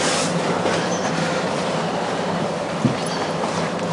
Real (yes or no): no